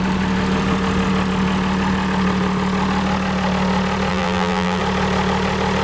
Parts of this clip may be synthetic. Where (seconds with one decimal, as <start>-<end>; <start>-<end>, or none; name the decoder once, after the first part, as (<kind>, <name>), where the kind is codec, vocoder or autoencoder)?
4.1-4.8 (vocoder, BigVGAN v2)